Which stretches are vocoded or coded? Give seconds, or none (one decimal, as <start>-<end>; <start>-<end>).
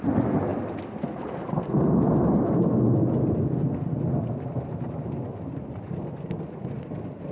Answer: none